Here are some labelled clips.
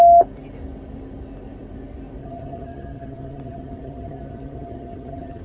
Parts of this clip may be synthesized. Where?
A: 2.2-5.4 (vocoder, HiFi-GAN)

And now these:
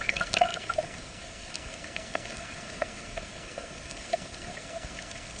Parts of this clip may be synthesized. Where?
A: 0.0-5.4 (codec, SNAC)